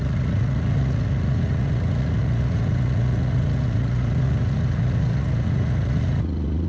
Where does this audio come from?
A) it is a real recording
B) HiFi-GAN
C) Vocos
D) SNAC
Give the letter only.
C